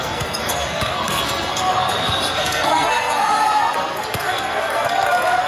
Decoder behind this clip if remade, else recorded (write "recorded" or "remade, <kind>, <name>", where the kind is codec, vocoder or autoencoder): remade, codec, SNAC